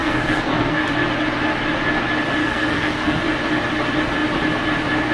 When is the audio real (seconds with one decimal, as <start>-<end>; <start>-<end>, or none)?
0.8-2.4; 3.2-5.1